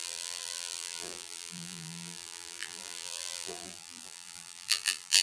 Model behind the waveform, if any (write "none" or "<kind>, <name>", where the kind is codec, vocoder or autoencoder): vocoder, BigVGAN v2